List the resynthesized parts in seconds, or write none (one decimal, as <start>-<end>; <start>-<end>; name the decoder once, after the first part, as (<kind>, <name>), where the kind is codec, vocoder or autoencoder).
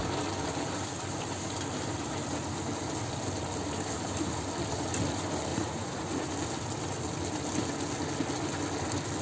5.5-6.3 (vocoder, Vocos)